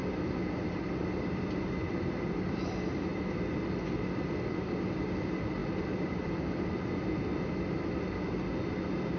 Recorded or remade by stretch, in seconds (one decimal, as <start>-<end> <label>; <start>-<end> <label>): 0.0-9.2 recorded